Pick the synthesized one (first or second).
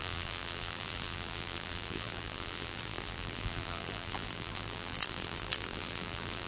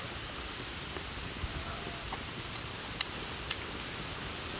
first